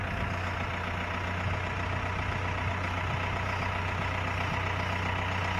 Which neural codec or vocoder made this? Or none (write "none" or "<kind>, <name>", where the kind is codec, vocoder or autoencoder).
none